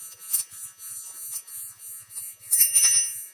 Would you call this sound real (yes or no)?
no